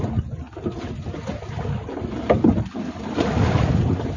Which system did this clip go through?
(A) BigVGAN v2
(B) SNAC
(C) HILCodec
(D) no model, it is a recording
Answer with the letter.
D